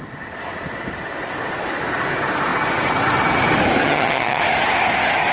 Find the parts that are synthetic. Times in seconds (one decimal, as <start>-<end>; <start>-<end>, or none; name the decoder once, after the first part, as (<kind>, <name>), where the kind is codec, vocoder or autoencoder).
3.8-4.4 (vocoder, HiFi-GAN)